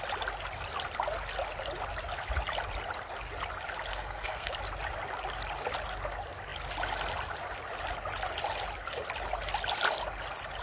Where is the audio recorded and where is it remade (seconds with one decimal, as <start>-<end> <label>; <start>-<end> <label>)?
0.0-3.9 recorded; 3.9-4.5 remade; 4.5-10.6 recorded